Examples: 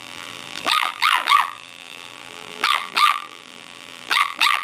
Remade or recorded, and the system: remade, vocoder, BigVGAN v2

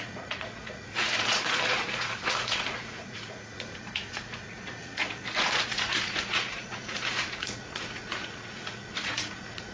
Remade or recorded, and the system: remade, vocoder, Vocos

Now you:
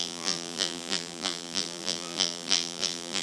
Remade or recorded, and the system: remade, vocoder, BigVGAN v2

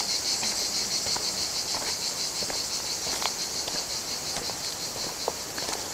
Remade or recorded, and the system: recorded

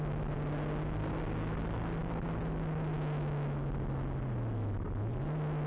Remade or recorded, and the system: recorded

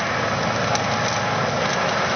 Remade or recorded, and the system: recorded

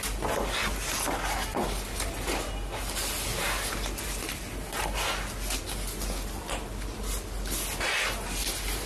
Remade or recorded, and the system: recorded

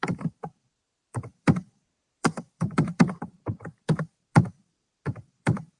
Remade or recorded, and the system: remade, vocoder, BigVGAN v2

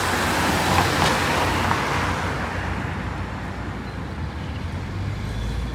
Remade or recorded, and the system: recorded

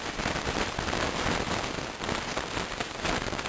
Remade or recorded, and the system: recorded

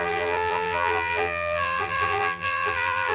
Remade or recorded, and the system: remade, vocoder, BigVGAN v2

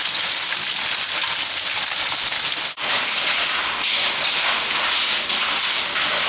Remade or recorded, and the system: recorded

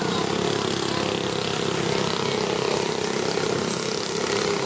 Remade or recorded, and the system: recorded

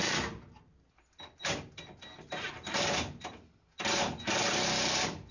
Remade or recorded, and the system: recorded